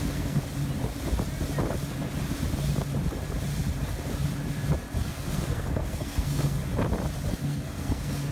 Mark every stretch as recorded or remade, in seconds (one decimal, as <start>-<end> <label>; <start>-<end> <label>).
0.0-0.4 remade; 0.4-5.0 recorded; 5.0-6.6 remade; 6.6-7.3 recorded; 7.3-8.3 remade